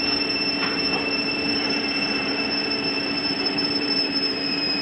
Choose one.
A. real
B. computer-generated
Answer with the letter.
B